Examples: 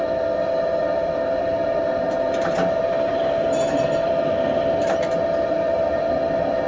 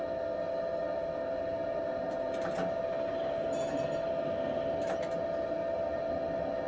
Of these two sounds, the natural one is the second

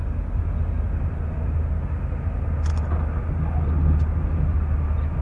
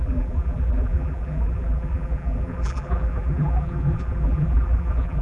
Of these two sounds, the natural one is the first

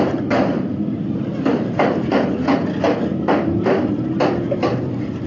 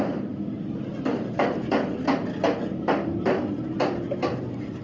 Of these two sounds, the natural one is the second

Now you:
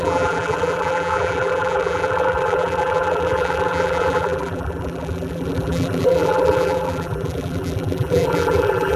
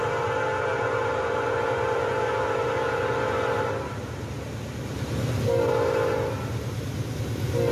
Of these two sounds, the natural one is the second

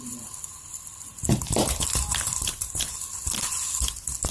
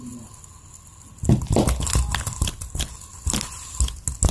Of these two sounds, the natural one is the second